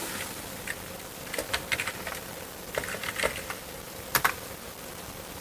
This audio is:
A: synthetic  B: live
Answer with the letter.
A